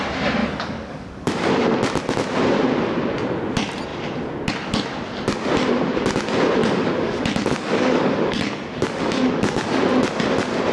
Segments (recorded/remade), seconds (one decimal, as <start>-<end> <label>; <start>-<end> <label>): 0.0-0.4 recorded; 0.4-1.5 remade; 1.5-6.6 recorded; 6.6-9.8 remade; 9.8-10.7 recorded